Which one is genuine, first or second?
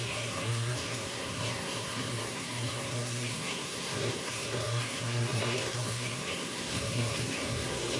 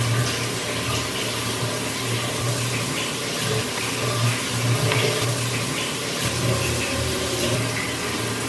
second